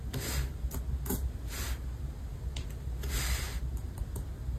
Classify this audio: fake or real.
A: real